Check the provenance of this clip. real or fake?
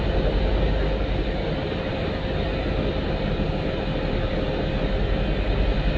real